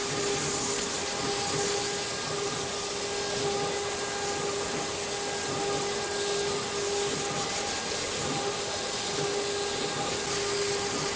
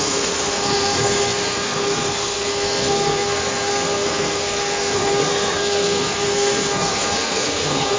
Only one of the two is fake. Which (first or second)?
second